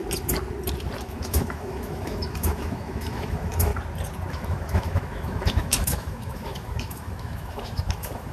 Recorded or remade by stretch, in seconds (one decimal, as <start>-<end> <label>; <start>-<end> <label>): 0.0-1.0 recorded; 1.0-3.7 remade; 3.7-4.3 recorded; 4.3-8.3 remade